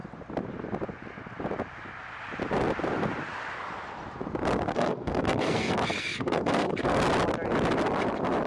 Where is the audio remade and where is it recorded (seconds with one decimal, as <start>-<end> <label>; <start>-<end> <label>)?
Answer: 0.0-4.7 recorded; 4.7-7.0 remade; 7.0-8.5 recorded